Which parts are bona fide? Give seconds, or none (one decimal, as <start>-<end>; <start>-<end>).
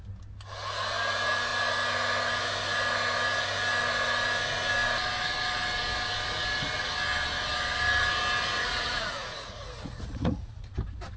0.0-8.5; 10.7-11.2